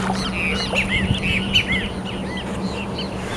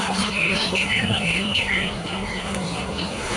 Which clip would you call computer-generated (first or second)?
second